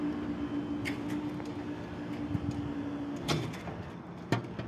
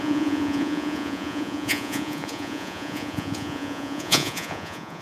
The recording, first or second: first